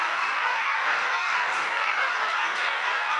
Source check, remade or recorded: remade